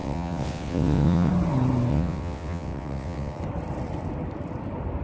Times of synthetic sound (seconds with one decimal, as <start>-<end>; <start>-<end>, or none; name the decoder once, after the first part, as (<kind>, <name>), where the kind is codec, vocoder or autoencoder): 0.0-1.3 (vocoder, WaveNeXt); 1.9-3.4